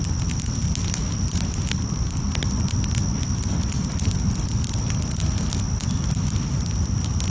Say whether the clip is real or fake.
real